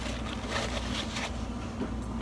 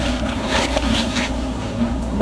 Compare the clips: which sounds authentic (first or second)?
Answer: first